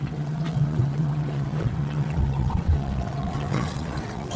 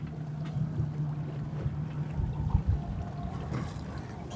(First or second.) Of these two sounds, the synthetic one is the first